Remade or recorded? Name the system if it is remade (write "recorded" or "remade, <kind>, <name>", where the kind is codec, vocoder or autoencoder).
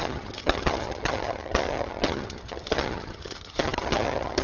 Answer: remade, vocoder, HiFi-GAN